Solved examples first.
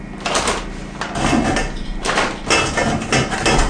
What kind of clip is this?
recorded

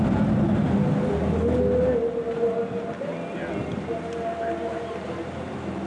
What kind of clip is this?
recorded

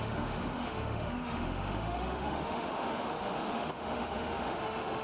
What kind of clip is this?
remade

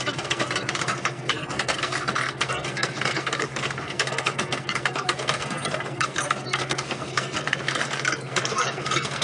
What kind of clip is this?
remade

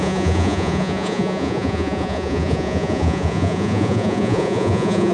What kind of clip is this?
remade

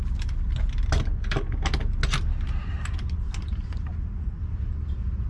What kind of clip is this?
recorded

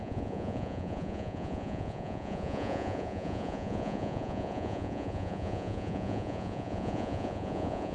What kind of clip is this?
remade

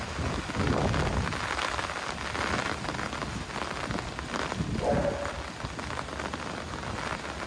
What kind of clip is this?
recorded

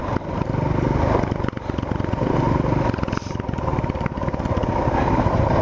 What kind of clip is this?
recorded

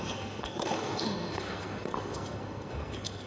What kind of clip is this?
remade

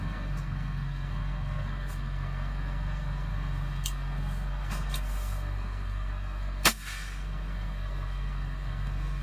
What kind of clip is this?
remade